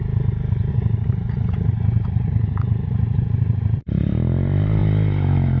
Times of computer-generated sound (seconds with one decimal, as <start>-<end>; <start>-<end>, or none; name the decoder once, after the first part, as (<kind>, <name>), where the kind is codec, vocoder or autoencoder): 0.7-4.1 (vocoder, Vocos)